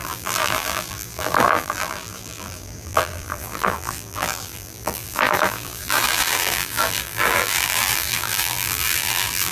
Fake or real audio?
fake